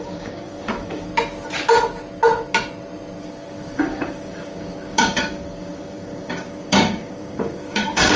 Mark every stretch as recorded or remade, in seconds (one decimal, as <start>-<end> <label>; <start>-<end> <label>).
0.0-1.1 remade; 1.1-3.2 recorded; 3.2-8.2 remade